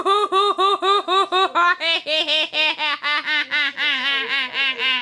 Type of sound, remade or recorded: recorded